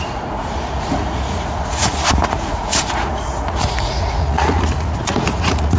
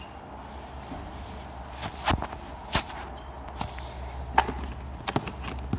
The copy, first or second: first